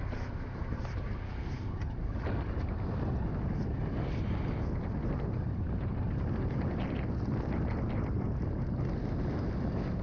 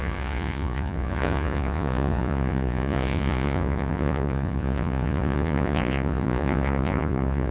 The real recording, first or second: first